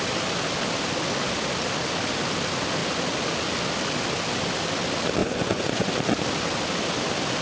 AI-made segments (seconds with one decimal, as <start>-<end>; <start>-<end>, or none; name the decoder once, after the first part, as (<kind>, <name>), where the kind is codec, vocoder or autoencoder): 5.2-5.9 (vocoder, Vocos)